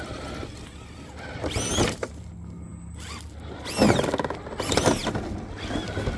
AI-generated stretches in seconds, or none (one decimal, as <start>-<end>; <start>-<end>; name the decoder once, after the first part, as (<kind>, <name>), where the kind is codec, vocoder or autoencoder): none